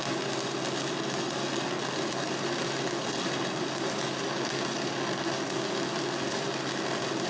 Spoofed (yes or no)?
no